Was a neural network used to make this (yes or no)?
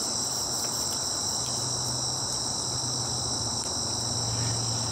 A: no